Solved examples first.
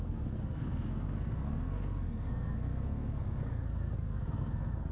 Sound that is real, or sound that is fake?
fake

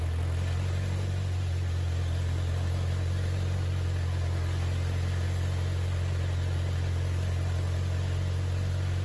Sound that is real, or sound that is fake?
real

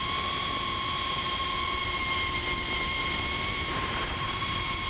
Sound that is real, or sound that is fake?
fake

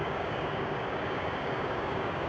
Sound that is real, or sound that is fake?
fake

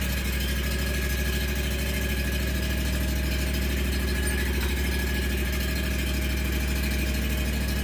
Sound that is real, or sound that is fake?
real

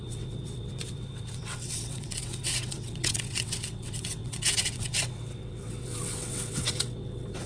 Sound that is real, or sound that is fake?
fake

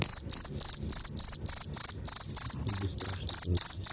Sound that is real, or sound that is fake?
real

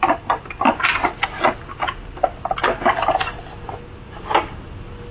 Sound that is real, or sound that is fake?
real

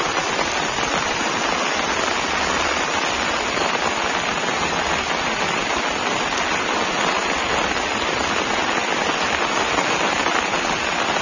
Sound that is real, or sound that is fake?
real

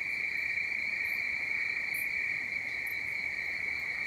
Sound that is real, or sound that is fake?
real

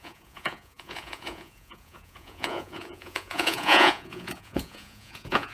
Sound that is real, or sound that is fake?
fake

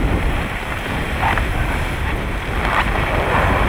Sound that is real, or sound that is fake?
fake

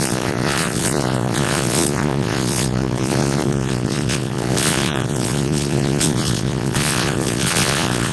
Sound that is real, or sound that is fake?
fake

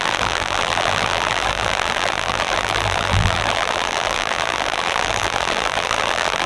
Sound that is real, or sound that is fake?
fake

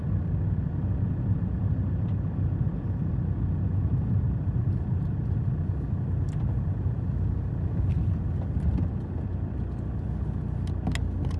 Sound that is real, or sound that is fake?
real